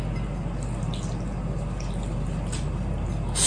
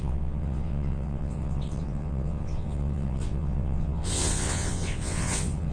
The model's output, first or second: second